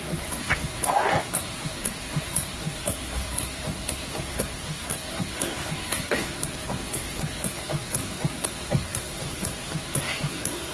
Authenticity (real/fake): fake